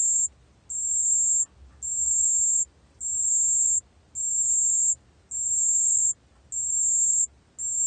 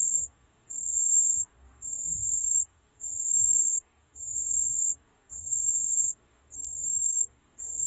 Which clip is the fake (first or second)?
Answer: second